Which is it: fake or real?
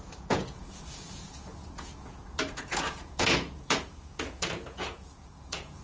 fake